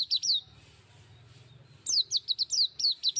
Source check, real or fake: real